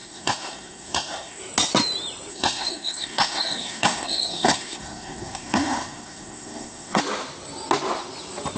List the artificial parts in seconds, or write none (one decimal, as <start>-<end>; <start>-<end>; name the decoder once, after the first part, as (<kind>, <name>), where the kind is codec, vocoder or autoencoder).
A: 0.0-1.4 (codec, SNAC); 2.3-7.0